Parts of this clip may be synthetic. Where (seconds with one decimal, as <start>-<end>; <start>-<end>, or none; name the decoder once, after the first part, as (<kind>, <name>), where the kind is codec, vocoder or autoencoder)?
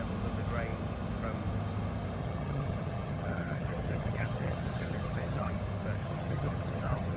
2.2-5.5 (vocoder, HiFi-GAN); 6.0-7.2